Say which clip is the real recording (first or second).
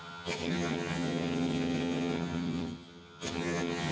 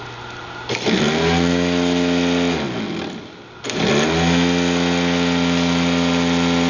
second